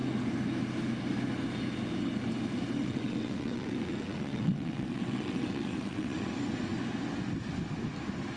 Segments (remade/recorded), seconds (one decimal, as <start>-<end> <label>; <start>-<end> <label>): 0.0-2.8 recorded; 2.8-6.3 remade; 6.3-8.4 recorded